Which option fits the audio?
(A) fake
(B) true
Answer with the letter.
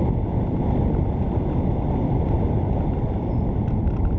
B